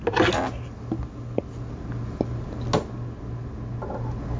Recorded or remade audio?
recorded